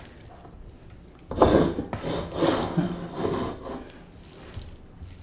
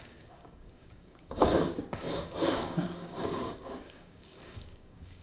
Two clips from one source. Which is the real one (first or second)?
first